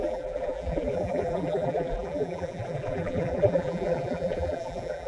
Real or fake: fake